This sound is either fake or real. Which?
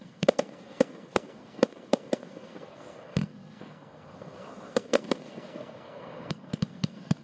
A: fake